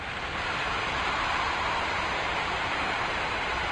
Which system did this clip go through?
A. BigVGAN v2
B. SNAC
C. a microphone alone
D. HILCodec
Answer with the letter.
A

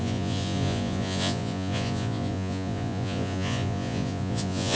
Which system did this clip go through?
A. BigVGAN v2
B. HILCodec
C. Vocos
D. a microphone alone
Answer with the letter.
C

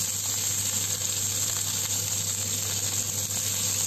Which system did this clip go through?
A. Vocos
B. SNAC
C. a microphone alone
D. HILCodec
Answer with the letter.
C